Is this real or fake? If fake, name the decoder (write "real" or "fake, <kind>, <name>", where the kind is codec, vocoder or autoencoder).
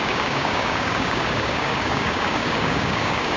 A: fake, codec, DAC